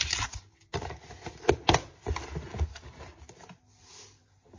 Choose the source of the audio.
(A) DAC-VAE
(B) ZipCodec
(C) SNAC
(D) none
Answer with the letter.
D